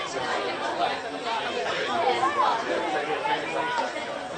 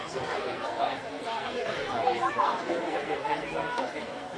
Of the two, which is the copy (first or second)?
second